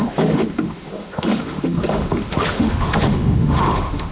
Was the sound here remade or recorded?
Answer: remade